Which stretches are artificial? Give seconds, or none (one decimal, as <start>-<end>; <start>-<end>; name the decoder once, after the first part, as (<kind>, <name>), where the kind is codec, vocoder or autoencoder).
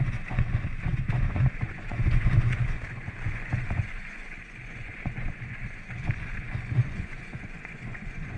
0.0-8.4 (vocoder, Vocos)